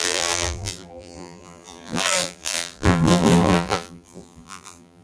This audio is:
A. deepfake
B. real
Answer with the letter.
A